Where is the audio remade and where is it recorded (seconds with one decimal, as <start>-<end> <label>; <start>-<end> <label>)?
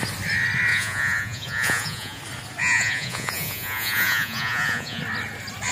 0.0-0.7 recorded; 0.7-2.2 remade; 2.2-2.6 recorded; 2.6-5.0 remade; 5.0-5.7 recorded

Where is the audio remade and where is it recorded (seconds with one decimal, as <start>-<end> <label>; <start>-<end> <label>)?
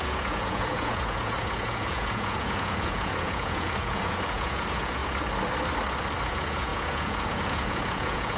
0.0-5.0 remade; 5.0-6.2 recorded; 6.2-8.4 remade